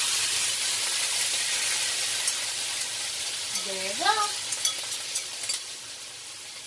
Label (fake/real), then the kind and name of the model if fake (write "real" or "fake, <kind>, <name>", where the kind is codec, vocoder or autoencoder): real